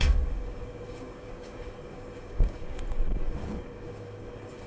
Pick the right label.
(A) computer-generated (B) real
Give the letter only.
A